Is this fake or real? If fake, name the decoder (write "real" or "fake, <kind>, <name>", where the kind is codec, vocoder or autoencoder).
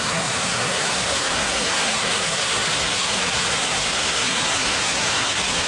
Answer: fake, codec, SNAC